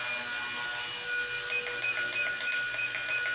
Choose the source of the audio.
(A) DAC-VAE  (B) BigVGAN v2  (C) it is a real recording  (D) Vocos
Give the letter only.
C